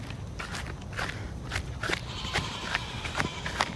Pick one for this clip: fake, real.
real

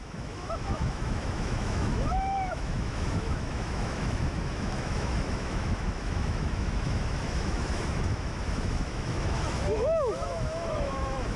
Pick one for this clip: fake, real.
fake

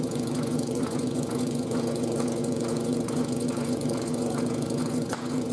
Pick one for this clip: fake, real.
fake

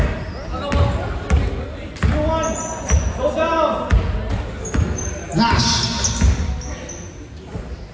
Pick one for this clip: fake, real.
real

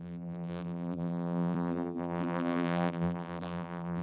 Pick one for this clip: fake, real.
fake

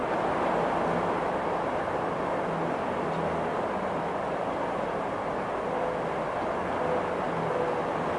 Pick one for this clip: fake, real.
real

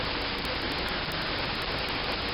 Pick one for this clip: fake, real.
real